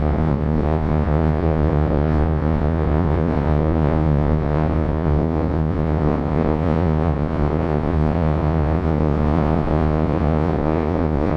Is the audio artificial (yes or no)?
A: yes